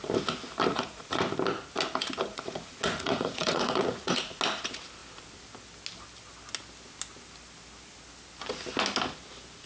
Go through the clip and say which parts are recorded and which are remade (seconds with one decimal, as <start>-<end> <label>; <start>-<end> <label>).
0.0-0.7 recorded; 0.7-1.2 remade; 1.2-2.3 recorded; 2.3-4.4 remade; 4.4-9.7 recorded